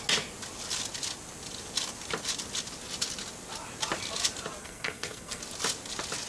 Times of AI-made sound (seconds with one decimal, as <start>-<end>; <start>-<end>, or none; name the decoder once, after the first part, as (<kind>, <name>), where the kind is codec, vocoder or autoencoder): 4.6-5.4 (codec, SNAC)